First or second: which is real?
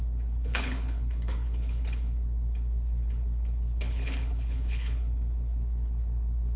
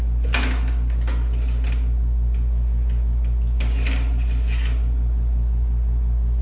second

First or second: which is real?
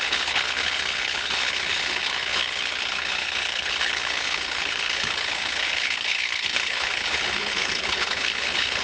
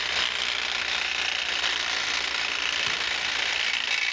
second